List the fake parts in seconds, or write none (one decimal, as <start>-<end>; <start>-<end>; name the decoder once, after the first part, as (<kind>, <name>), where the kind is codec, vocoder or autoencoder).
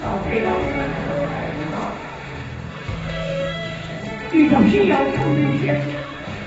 0.0-4.0 (autoencoder, DAC-VAE); 5.6-6.5